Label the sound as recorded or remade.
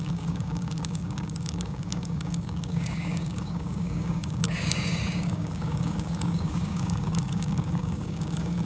remade